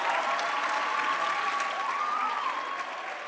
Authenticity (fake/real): real